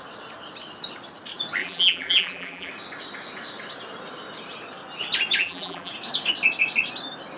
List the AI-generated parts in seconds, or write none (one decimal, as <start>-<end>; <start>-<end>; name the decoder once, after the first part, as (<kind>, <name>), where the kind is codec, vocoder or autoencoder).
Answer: 1.6-2.7 (vocoder, BigVGAN v2); 5.4-5.9